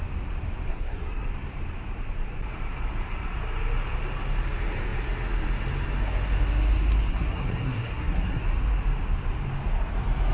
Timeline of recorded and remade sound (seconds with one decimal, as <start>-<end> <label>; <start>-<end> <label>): 0.0-0.7 recorded; 0.7-1.3 remade; 1.3-7.1 recorded; 7.1-8.4 remade; 8.4-10.3 recorded